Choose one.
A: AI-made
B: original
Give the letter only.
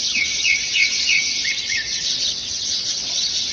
A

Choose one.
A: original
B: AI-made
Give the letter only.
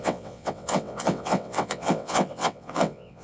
B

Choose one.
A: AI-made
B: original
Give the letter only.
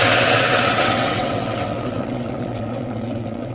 A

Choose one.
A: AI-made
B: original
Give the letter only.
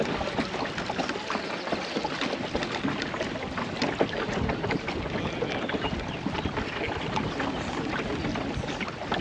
B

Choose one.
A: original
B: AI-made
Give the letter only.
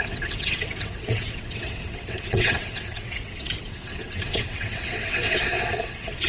B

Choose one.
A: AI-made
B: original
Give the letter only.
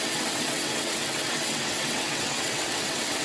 A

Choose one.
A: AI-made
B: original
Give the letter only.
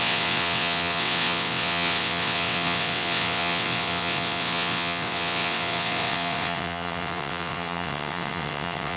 A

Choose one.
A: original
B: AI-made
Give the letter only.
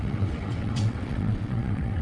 B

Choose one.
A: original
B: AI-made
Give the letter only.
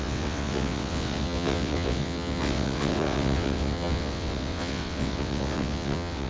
B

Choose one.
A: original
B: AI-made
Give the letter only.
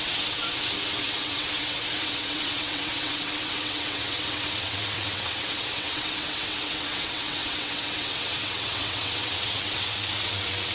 B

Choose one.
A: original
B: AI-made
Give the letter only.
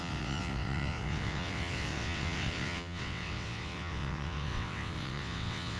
B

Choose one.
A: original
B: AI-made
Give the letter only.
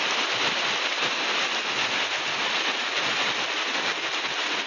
A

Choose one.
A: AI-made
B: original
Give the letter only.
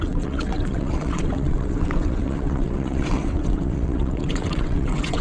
A